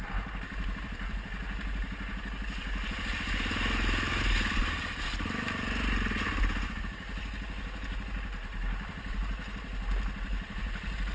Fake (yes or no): no